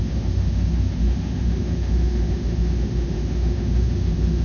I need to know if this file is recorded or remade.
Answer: remade